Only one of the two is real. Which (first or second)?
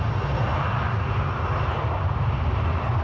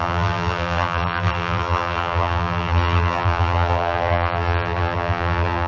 first